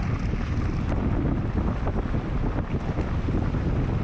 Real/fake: real